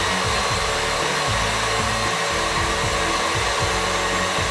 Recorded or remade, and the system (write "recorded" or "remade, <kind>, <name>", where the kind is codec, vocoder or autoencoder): recorded